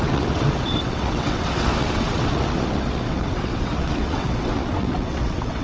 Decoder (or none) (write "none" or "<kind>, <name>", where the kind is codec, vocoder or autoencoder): vocoder, WaveNeXt